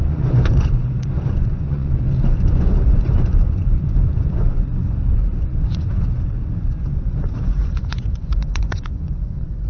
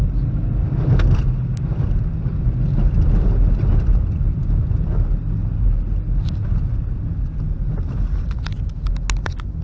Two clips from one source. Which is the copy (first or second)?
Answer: first